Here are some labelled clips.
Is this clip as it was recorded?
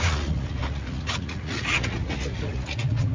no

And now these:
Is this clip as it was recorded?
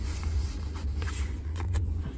no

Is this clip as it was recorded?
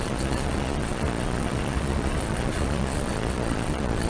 no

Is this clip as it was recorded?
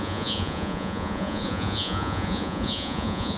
no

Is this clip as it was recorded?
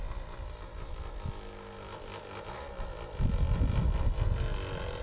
yes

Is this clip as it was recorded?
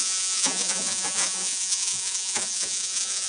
no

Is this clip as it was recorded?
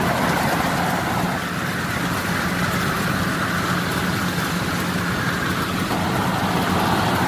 yes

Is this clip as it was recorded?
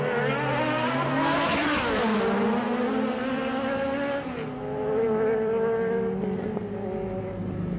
yes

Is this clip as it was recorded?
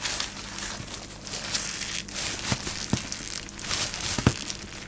yes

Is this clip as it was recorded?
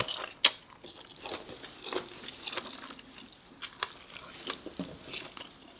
yes